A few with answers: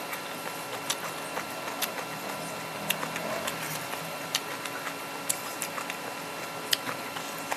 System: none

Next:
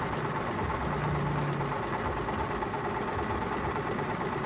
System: none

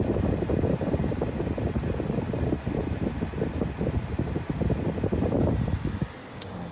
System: none